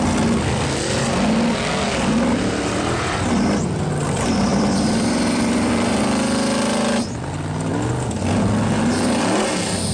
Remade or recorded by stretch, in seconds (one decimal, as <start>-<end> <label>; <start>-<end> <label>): 0.0-4.5 recorded; 4.5-6.0 remade; 6.0-7.7 recorded; 7.7-8.3 remade; 8.3-9.9 recorded